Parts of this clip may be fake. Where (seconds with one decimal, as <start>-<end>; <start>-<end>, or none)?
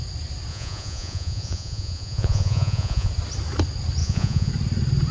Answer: 0.5-3.1; 4.0-4.5